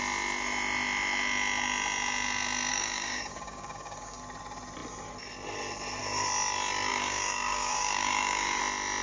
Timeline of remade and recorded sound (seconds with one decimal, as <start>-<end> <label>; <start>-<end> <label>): 0.0-2.7 recorded; 2.7-4.2 remade; 4.2-6.9 recorded; 6.9-8.6 remade; 8.6-9.0 recorded

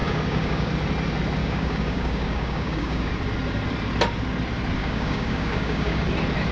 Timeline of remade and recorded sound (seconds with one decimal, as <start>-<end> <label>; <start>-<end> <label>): 0.0-0.7 remade; 0.7-1.4 recorded; 1.4-3.1 remade; 3.1-4.8 recorded; 4.8-6.0 remade; 6.0-6.5 recorded

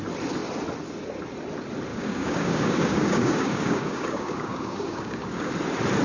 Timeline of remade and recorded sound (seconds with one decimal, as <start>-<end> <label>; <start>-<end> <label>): 0.0-1.9 recorded; 1.9-5.5 remade; 5.5-6.0 recorded

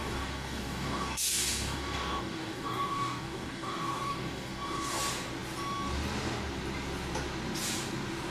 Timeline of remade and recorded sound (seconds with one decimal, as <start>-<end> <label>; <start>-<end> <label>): 0.0-5.0 remade; 5.0-8.3 recorded

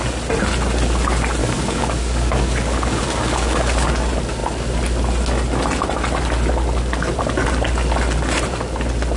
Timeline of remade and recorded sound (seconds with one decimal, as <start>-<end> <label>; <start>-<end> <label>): 0.0-1.4 recorded; 1.4-3.9 remade; 3.9-9.2 recorded

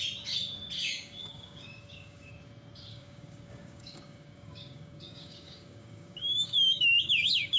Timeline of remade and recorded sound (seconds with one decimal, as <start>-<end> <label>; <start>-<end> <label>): 0.0-0.8 recorded; 0.8-2.3 remade; 2.3-2.9 recorded; 2.9-7.6 remade